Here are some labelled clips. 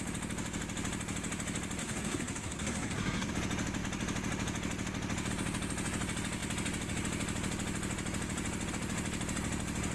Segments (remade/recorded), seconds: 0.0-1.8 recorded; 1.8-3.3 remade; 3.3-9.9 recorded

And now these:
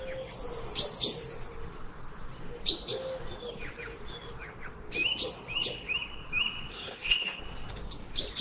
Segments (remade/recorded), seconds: 0.0-6.7 recorded; 6.7-7.4 remade; 7.4-8.4 recorded

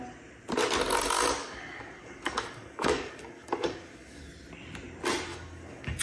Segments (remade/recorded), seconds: 0.0-1.4 recorded; 1.4-4.3 remade; 4.3-5.3 recorded; 5.3-6.0 remade

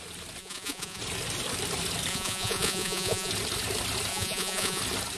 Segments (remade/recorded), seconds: 0.0-0.4 recorded; 0.4-1.0 remade; 1.0-2.1 recorded; 2.1-3.3 remade; 3.3-4.1 recorded; 4.1-4.8 remade; 4.8-5.2 recorded

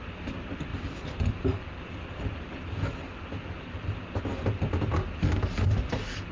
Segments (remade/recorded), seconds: 0.0-6.3 recorded

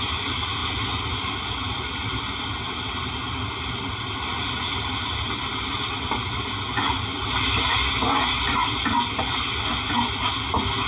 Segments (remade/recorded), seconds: 0.0-10.9 recorded